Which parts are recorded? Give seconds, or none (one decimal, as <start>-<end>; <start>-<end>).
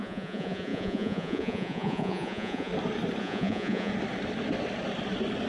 2.7-3.2; 3.9-5.5